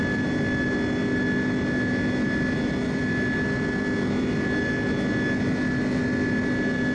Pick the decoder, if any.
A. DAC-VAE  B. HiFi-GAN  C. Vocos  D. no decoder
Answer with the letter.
D